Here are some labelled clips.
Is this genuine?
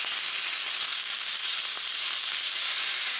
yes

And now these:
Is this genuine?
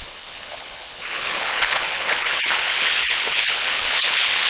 no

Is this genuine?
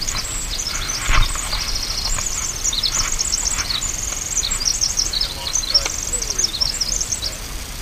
yes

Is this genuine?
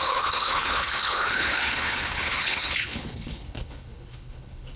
no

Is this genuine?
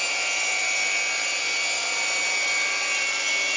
yes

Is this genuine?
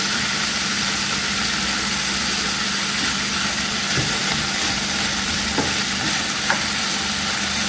yes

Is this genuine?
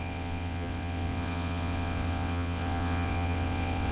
no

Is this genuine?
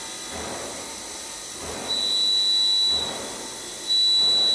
yes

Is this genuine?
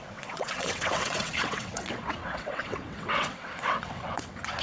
no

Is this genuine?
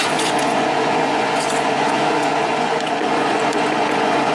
no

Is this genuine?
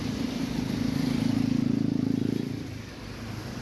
yes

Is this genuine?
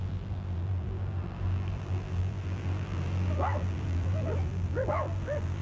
no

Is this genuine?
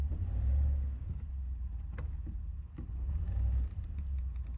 yes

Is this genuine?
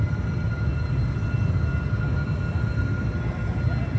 yes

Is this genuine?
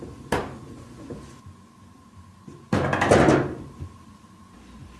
yes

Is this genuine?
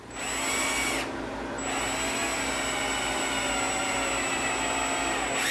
yes